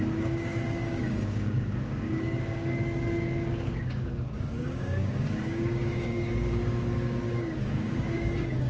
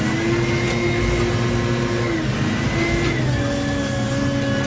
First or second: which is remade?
first